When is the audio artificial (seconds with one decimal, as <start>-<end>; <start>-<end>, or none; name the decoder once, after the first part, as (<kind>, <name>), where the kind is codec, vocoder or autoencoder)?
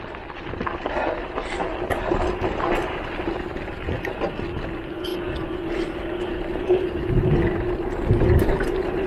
none